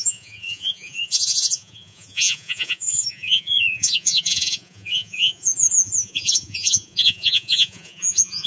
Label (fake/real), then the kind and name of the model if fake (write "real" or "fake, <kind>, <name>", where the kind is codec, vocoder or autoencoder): fake, vocoder, Vocos